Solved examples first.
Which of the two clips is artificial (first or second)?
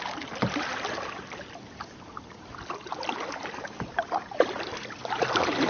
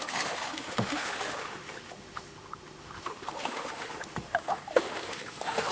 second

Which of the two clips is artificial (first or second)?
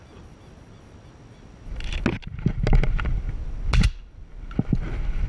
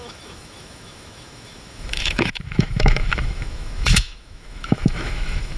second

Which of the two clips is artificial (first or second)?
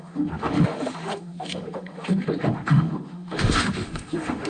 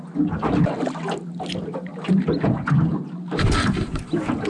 first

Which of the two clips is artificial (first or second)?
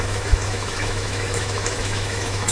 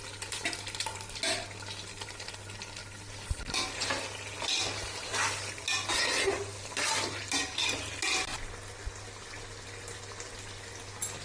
first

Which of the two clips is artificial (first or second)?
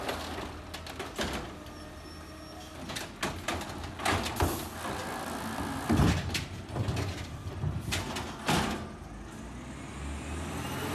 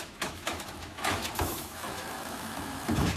second